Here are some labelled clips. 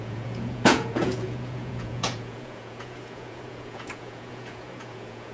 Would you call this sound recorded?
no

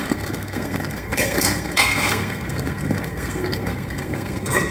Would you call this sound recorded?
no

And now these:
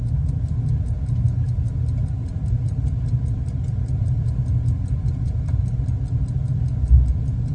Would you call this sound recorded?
yes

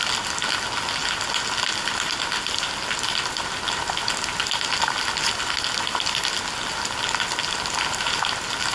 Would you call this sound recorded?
yes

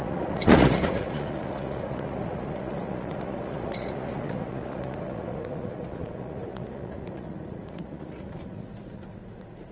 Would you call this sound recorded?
no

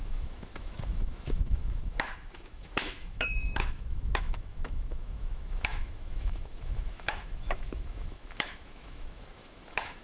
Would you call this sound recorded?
no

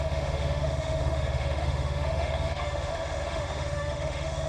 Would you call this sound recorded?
no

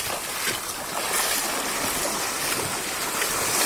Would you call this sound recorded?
yes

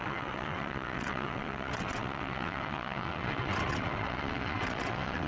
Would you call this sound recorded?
no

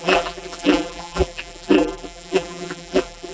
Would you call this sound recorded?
no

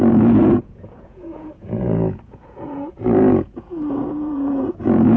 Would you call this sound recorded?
no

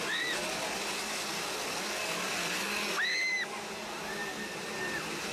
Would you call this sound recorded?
yes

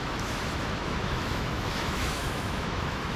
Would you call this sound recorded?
no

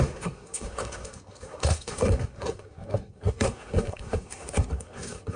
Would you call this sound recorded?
no